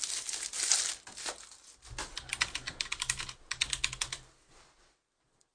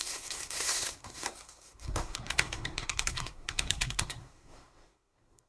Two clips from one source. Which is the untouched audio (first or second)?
first